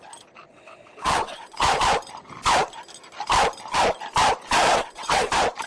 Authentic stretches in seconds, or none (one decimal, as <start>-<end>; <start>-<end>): 0.0-0.5; 1.8-4.7; 5.3-5.7